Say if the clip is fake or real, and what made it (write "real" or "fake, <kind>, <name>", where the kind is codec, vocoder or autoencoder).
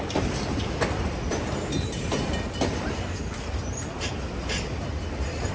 fake, vocoder, BigVGAN v2